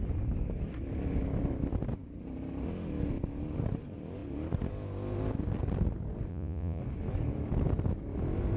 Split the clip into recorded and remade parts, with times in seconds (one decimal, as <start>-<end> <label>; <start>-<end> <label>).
0.0-6.3 recorded; 6.3-6.8 remade; 6.8-8.6 recorded